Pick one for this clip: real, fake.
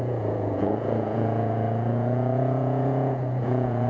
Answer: fake